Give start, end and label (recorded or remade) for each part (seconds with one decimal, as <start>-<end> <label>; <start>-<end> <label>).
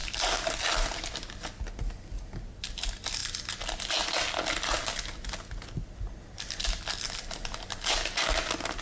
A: 0.0-8.8 recorded